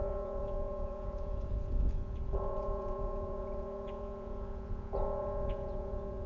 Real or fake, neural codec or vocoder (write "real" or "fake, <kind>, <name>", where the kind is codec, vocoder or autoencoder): fake, vocoder, Vocos